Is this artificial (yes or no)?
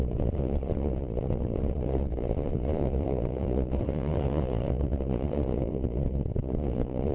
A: yes